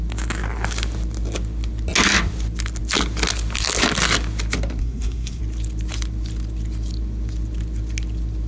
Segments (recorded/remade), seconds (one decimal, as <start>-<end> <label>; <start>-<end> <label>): 0.0-4.8 recorded; 4.8-5.4 remade; 5.4-8.5 recorded